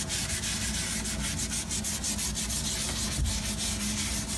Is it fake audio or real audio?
real